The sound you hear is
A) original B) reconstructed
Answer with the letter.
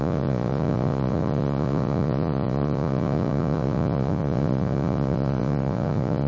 B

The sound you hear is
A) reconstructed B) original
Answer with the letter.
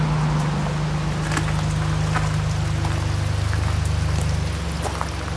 B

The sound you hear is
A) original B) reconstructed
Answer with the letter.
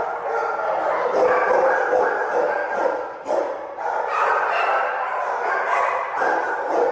A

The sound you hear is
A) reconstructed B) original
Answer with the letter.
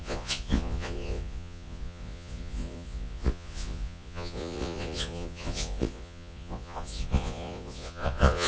A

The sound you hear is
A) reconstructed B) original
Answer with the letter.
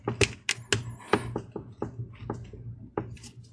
B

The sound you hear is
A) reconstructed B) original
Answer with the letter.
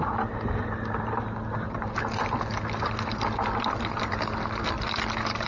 B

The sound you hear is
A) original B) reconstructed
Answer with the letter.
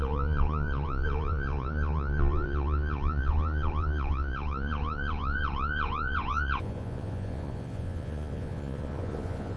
B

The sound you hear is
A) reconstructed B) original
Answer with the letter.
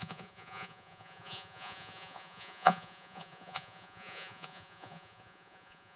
A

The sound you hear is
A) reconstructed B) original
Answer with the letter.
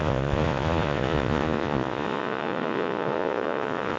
A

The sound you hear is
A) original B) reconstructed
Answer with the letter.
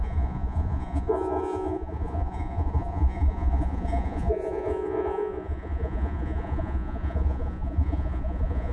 B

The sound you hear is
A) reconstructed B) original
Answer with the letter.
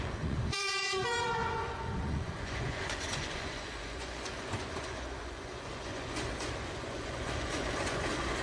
A